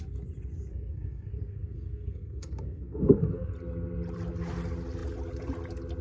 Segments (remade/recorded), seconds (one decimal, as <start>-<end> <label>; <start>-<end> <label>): 0.0-0.7 recorded; 0.7-3.5 remade; 3.5-6.0 recorded